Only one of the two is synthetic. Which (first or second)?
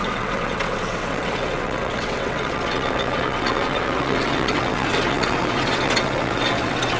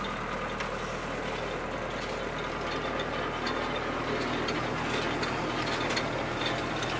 first